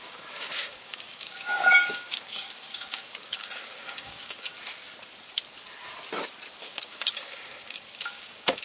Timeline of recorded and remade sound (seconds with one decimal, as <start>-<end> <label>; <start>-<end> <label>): 0.0-4.5 remade; 4.5-6.6 recorded; 6.6-8.6 remade